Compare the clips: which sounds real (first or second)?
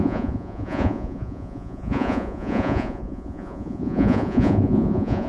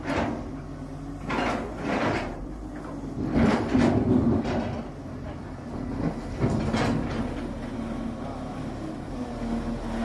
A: second